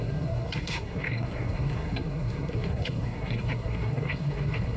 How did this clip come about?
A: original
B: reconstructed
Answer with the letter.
B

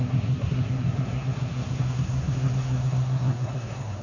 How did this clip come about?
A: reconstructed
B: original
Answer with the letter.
A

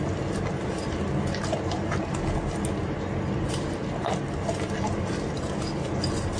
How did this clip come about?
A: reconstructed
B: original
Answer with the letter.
B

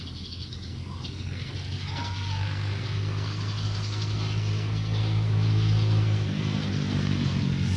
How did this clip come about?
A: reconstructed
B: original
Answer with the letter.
A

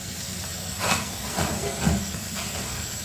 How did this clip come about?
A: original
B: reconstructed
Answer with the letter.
B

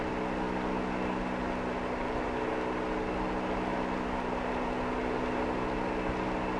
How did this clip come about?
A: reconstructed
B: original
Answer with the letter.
B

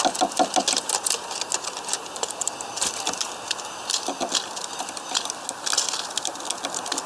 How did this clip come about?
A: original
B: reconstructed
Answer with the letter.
A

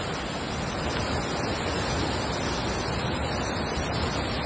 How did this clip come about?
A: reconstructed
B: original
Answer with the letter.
B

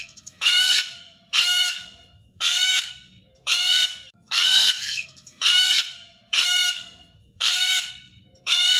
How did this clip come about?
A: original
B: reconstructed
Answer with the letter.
B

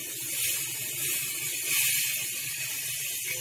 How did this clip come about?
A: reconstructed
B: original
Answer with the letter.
B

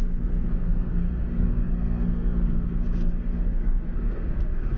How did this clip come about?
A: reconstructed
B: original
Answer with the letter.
A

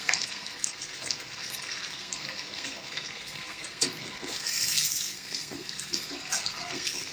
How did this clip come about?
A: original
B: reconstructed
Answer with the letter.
B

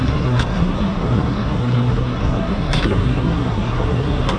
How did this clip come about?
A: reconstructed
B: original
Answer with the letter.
A